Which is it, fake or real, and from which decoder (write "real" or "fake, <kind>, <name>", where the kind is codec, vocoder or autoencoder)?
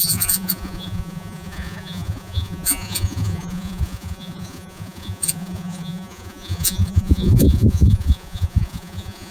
fake, vocoder, Vocos